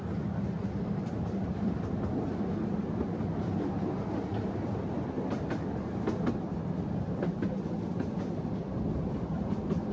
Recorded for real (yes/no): yes